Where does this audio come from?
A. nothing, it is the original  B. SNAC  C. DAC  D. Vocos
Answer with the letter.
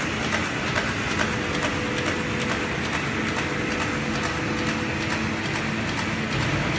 A